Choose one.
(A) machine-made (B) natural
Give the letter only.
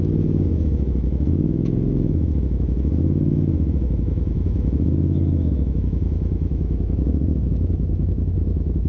A